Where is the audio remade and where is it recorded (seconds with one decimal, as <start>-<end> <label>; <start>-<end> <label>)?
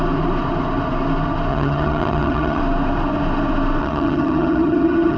0.0-1.5 recorded; 1.5-2.6 remade; 2.6-3.8 recorded; 3.8-5.2 remade